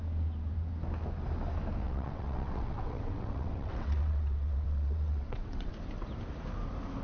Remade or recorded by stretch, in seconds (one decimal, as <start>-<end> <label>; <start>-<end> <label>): 0.0-1.8 recorded; 1.8-5.7 remade; 5.7-7.0 recorded